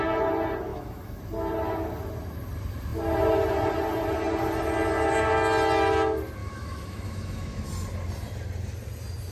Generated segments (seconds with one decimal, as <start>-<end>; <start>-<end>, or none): 0.7-1.2; 6.4-7.7